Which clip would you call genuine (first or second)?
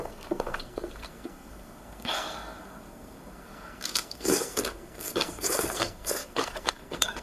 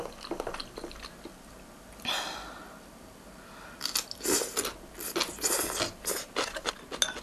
second